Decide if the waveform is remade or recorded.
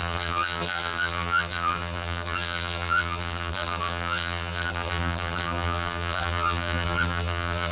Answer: remade